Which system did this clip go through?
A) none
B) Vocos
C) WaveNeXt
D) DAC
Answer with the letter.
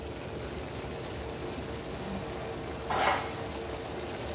A